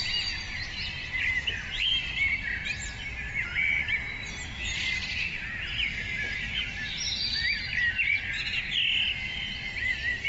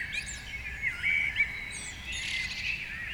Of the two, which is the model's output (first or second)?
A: first